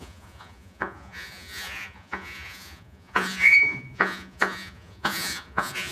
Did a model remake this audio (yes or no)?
yes